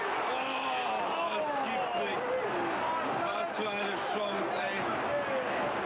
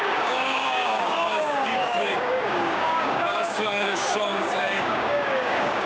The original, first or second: first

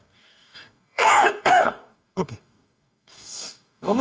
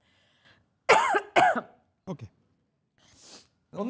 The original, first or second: second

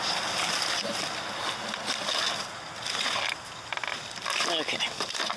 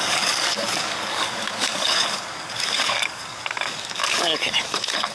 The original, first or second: first